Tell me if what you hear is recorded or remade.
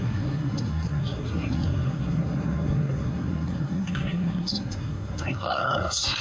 remade